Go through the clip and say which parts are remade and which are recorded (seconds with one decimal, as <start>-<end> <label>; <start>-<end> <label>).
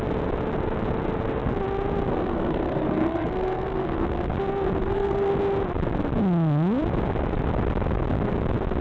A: 0.0-2.1 recorded; 2.1-4.3 remade; 4.3-4.8 recorded; 4.8-5.3 remade; 5.3-8.8 recorded